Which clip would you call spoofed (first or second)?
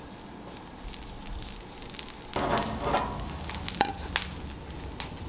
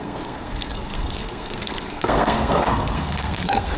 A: second